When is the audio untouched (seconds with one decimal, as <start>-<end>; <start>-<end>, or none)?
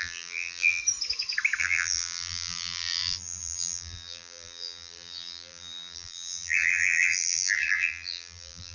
0.8-1.6